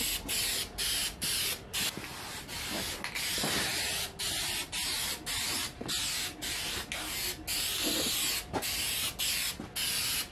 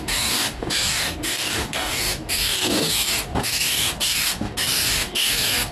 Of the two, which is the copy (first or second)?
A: second